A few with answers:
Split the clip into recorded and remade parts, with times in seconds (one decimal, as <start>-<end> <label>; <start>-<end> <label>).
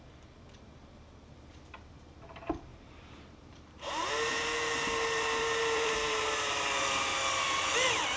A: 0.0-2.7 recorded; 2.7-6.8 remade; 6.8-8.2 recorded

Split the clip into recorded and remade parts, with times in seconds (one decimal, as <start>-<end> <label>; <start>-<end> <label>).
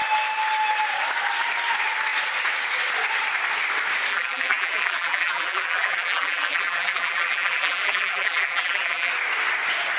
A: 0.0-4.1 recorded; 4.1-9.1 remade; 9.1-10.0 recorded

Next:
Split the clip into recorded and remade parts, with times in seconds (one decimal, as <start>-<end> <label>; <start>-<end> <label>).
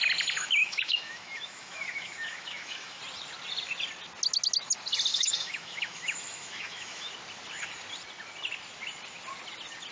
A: 0.0-0.6 recorded; 0.6-3.0 remade; 3.0-5.1 recorded; 5.1-7.1 remade; 7.1-9.9 recorded